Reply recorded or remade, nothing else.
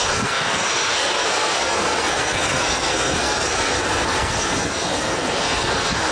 remade